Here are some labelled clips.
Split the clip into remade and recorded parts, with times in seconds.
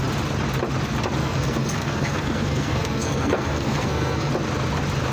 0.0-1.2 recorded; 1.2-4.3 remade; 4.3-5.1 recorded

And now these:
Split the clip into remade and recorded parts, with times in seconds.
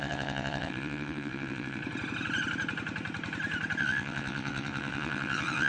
0.0-1.8 remade; 1.8-3.8 recorded; 3.8-5.7 remade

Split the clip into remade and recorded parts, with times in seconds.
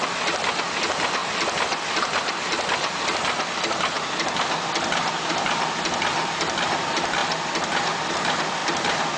0.0-9.2 recorded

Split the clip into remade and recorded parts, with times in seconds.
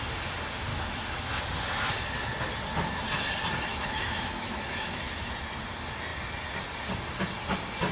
0.0-0.7 recorded; 0.7-1.4 remade; 1.4-3.7 recorded; 3.7-5.3 remade; 5.3-7.9 recorded